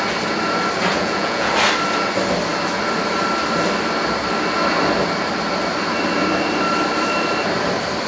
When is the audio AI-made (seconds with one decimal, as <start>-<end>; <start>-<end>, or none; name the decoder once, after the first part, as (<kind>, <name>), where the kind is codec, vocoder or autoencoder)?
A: 0.9-1.5 (vocoder, Vocos)

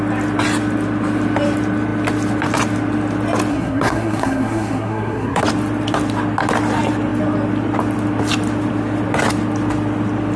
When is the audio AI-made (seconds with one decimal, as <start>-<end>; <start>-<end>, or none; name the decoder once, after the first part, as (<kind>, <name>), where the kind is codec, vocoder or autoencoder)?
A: 3.5-5.4 (codec, SNAC)

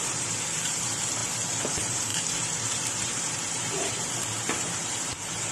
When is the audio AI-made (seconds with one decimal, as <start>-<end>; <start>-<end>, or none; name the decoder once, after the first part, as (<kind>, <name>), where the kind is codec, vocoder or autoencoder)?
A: 0.0-5.5 (vocoder, BigVGAN v2)

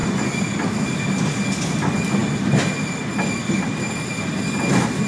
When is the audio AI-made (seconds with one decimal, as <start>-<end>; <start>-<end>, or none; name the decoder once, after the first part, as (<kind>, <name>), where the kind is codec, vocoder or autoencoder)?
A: none

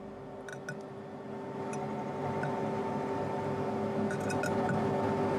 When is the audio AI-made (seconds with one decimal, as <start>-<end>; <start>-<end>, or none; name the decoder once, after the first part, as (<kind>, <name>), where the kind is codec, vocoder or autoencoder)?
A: none

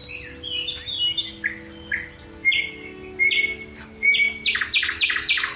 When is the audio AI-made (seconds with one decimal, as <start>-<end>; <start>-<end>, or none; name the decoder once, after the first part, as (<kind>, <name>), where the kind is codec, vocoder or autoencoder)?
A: none

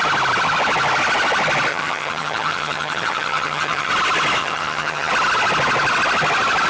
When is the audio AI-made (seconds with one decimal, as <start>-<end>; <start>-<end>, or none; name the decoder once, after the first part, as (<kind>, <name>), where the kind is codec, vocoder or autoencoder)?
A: 1.7-3.9 (vocoder, HiFi-GAN); 4.4-5.1

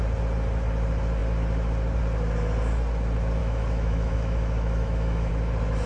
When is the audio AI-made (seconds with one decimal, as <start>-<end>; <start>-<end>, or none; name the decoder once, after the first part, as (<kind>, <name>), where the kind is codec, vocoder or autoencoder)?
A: 3.4-5.3 (autoencoder, DAC-VAE)